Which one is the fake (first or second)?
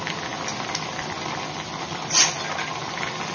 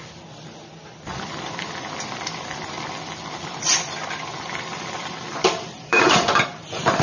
second